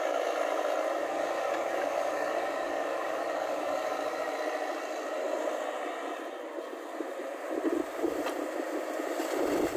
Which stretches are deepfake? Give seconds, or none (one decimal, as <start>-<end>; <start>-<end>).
1.0-4.3